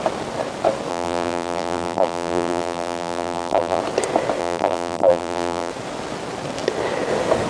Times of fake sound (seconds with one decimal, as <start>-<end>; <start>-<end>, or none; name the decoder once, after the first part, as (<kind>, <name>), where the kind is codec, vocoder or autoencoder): 0.9-3.8 (vocoder, BigVGAN v2); 4.4-5.7